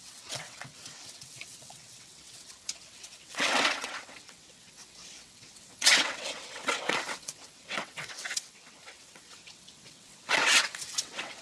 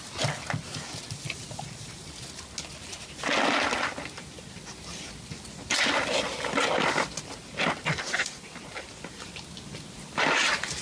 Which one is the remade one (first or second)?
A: first